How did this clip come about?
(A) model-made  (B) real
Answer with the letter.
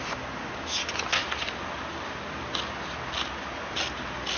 B